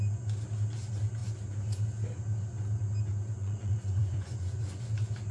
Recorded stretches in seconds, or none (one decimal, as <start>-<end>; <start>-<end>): 0.0-3.4; 4.8-5.3